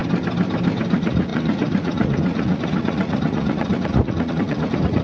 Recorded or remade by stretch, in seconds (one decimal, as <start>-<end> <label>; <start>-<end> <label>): 0.0-0.9 recorded; 0.9-5.0 remade